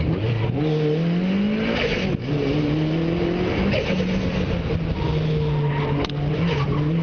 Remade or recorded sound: recorded